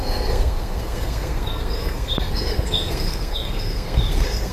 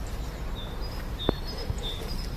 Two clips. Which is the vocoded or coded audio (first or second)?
first